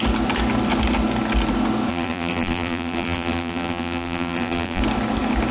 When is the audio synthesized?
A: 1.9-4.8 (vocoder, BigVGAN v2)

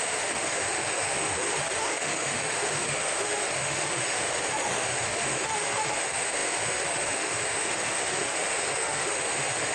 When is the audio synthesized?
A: 0.0-9.7 (autoencoder, DAC-VAE)